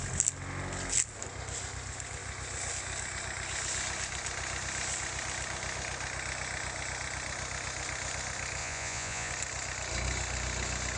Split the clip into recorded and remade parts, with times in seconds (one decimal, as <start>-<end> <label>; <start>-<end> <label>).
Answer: 0.0-8.6 recorded; 8.6-9.3 remade; 9.3-11.0 recorded